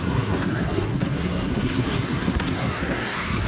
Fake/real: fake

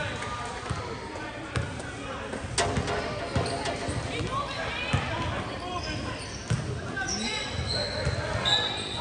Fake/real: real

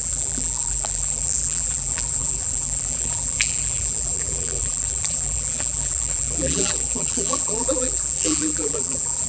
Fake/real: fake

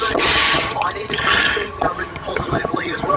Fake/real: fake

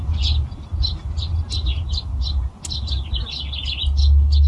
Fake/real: real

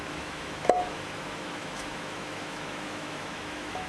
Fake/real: fake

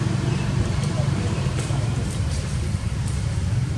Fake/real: fake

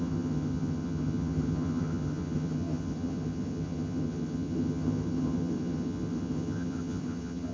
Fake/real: fake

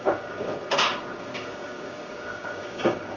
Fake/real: fake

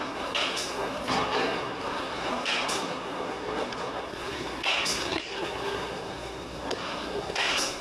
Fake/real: fake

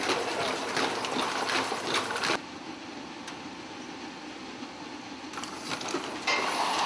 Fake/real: real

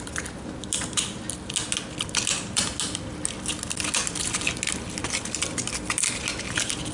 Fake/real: real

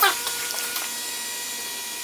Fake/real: fake